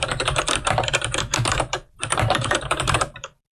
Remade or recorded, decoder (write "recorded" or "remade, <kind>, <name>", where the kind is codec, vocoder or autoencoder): remade, vocoder, BigVGAN v2